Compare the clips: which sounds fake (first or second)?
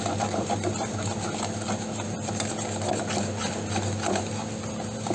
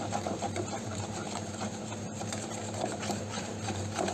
second